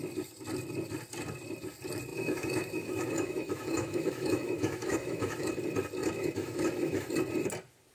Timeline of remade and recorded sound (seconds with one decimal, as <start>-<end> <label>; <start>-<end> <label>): 0.0-2.1 recorded; 2.1-5.5 remade; 5.5-6.0 recorded; 6.0-7.1 remade; 7.1-7.9 recorded